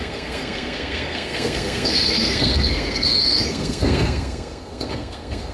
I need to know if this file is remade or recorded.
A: remade